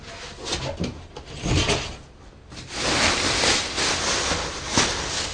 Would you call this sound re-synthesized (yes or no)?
no